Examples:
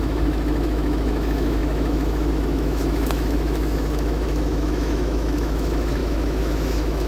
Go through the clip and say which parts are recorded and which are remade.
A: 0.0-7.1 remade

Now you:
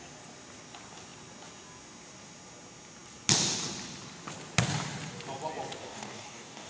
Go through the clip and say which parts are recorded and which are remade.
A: 0.0-5.8 recorded; 5.8-6.7 remade

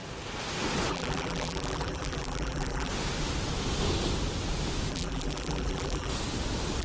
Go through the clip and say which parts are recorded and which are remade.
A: 0.0-0.9 recorded; 0.9-2.9 remade; 2.9-4.9 recorded; 4.9-6.1 remade; 6.1-6.8 recorded

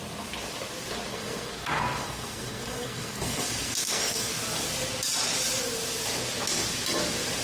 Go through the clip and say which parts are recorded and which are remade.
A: 0.0-1.1 recorded; 1.1-4.3 remade; 4.3-7.4 recorded

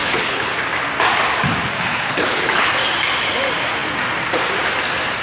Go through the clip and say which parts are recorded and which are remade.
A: 0.0-0.5 remade; 0.5-1.9 recorded; 1.9-2.7 remade; 2.7-5.2 recorded